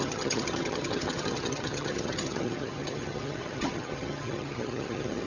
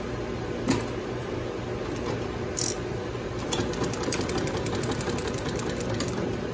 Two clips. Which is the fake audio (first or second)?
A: first